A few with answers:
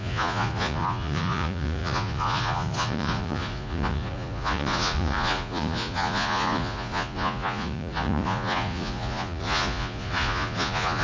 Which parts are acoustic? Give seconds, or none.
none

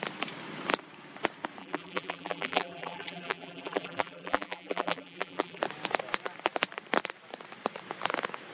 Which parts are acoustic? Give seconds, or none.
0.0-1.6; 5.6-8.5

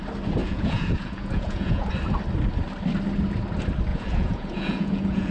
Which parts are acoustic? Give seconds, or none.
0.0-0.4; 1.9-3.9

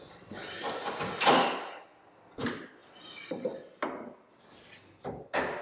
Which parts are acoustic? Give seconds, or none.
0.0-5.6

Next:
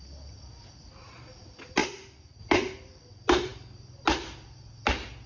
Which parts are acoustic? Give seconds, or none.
0.0-5.3

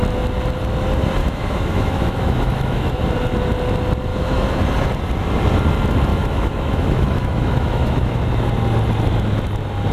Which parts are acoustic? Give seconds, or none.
0.0-1.2; 3.0-4.1; 4.6-6.1; 8.2-9.9